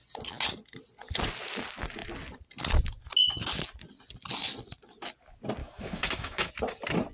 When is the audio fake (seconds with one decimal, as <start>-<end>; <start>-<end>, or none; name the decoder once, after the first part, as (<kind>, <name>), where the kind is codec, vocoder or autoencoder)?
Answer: 5.6-6.5 (autoencoder, DAC-VAE)